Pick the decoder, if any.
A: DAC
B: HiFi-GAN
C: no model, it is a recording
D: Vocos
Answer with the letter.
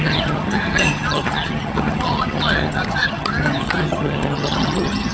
B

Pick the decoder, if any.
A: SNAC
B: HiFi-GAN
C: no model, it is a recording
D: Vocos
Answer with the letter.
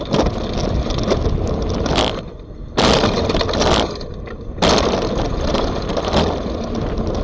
C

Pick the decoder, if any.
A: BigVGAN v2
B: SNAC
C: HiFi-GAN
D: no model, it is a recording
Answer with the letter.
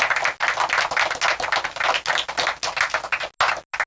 D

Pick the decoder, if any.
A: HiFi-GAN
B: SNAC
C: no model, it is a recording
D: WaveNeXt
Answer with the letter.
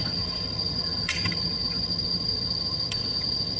A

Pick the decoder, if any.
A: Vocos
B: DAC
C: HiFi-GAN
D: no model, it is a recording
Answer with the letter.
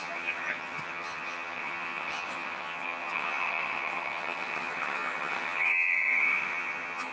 C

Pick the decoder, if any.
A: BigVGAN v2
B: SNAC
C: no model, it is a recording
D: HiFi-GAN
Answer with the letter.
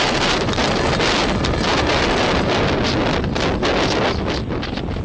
C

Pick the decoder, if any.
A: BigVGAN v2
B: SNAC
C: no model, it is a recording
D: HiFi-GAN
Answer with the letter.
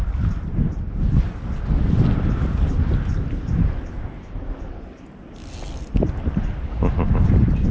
C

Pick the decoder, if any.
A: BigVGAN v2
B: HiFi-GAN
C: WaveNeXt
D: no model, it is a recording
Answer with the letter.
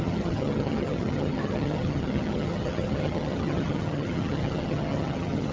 B